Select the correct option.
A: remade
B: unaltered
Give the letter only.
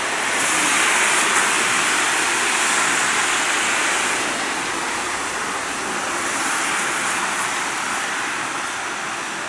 B